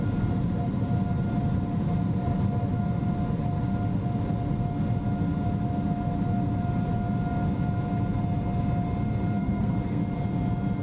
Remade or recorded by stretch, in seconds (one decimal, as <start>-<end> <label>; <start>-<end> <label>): 0.0-9.4 recorded; 9.4-10.0 remade; 10.0-10.8 recorded